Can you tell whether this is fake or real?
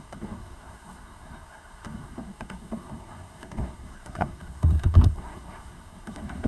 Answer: fake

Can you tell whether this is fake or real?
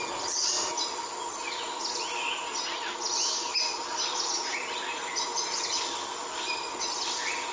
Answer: real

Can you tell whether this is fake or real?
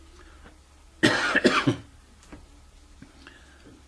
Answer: real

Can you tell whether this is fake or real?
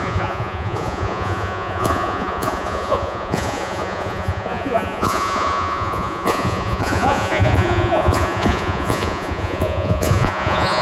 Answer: fake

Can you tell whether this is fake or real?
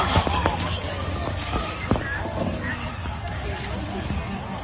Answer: fake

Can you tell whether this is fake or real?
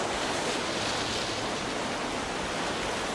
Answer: real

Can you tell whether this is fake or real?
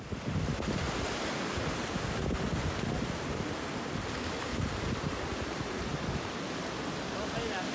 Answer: real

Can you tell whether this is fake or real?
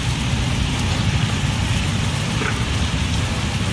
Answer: fake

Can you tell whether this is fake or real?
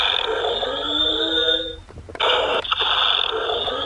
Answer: real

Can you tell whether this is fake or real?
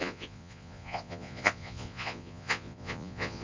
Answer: fake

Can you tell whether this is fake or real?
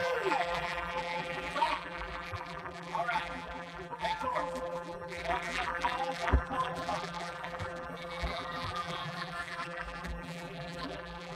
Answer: fake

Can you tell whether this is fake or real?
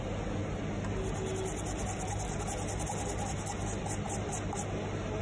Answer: real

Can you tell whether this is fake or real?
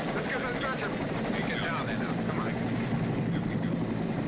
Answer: real